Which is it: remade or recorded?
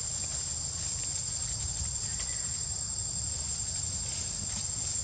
recorded